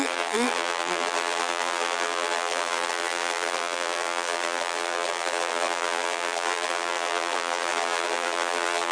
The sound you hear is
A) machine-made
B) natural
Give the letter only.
A